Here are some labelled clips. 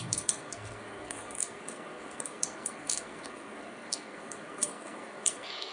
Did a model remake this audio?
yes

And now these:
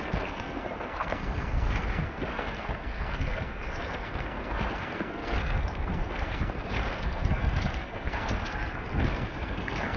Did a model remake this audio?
yes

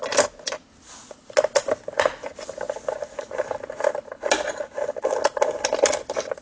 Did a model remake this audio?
no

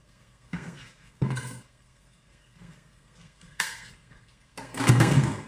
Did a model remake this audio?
yes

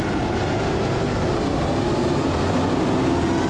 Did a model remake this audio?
no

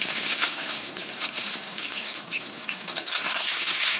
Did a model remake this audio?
yes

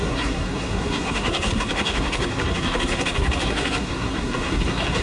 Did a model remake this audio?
yes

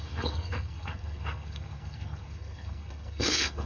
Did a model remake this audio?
yes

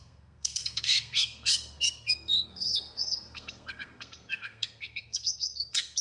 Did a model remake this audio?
yes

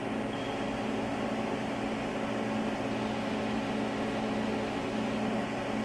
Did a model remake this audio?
no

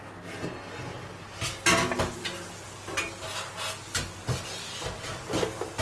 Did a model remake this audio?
no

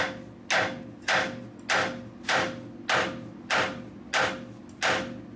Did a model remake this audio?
no